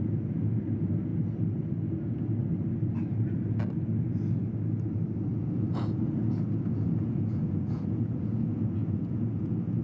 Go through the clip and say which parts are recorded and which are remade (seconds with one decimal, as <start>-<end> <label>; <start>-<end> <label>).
0.0-5.3 recorded; 5.3-9.8 remade